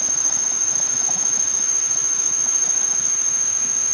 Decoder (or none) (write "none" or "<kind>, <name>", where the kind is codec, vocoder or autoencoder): autoencoder, DAC-VAE